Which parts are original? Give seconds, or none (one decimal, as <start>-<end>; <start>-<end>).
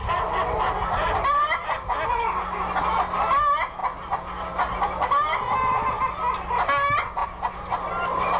1.4-7.2; 7.9-8.4